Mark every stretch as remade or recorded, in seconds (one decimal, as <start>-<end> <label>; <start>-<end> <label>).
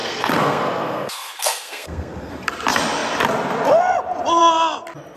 0.0-2.3 remade; 2.3-5.2 recorded